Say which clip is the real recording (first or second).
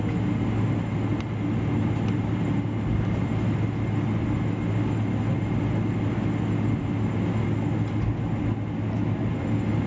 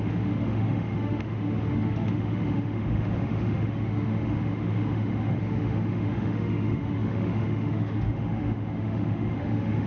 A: first